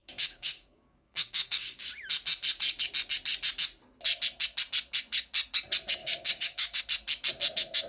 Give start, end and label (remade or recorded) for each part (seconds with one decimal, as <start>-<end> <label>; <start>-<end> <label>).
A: 0.0-1.9 remade; 1.9-6.0 recorded; 6.0-6.8 remade; 6.8-7.9 recorded